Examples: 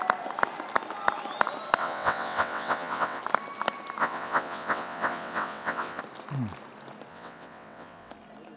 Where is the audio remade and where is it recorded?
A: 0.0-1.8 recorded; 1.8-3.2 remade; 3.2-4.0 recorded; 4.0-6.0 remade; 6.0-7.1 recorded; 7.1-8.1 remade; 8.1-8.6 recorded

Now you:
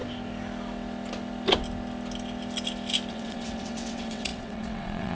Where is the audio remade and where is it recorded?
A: 0.0-3.1 recorded; 3.1-5.1 remade

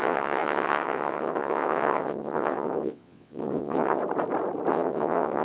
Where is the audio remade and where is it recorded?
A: 0.0-4.0 remade; 4.0-4.7 recorded; 4.7-5.4 remade